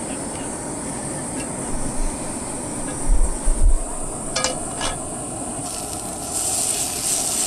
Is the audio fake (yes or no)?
no